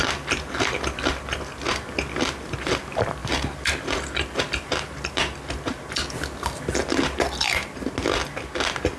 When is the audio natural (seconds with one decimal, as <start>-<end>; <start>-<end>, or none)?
0.0-9.0